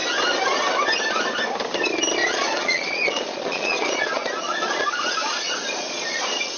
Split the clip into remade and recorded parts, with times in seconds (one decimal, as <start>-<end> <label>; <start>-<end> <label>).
0.0-2.2 recorded; 2.2-6.6 remade